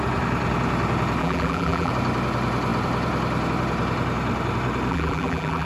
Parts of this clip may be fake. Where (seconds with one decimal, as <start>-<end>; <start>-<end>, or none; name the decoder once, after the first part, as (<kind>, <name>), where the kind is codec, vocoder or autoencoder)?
1.2-1.9 (vocoder, BigVGAN v2); 4.9-5.7